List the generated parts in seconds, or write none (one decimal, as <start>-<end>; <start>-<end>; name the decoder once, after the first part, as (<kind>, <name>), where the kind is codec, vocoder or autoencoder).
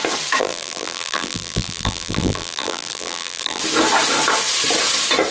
0.4-3.6 (vocoder, BigVGAN v2)